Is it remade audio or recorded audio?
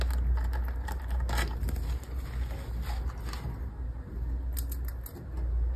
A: recorded